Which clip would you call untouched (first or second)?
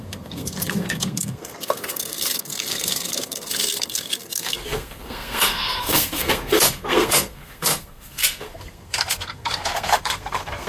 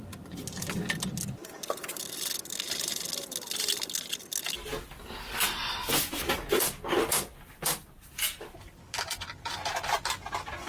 second